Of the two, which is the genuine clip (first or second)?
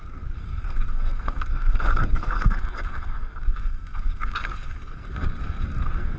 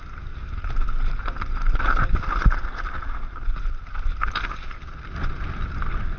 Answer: second